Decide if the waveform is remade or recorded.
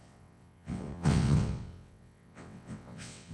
remade